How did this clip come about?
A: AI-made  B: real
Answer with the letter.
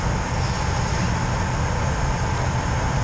B